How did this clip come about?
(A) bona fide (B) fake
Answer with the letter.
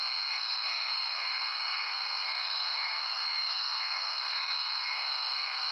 B